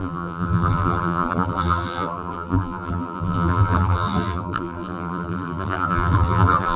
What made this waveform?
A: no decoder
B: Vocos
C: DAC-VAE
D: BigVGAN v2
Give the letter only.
D